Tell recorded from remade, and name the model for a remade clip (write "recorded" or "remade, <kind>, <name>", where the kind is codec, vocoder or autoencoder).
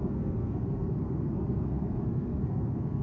remade, codec, SNAC